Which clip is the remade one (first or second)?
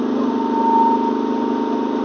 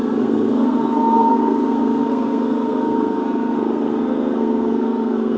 second